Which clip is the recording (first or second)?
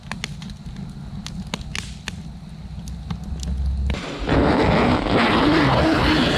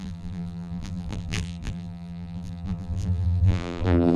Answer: first